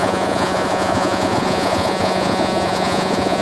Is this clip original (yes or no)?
no